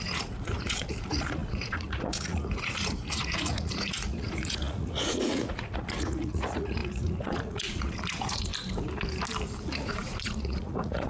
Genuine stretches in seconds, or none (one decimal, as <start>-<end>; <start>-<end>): 8.5-9.6